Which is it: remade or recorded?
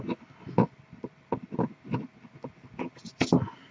recorded